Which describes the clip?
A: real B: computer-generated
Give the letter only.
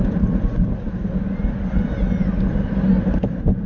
A